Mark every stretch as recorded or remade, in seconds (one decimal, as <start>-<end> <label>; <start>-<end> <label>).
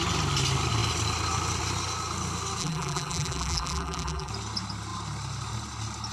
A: 0.0-2.6 recorded; 2.6-4.3 remade; 4.3-6.1 recorded